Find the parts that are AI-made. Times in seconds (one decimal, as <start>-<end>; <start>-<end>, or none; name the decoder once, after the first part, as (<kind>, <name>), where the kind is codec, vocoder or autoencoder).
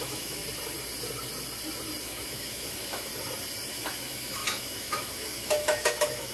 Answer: 0.0-0.4 (autoencoder, DAC-VAE); 2.0-3.1; 3.7-6.3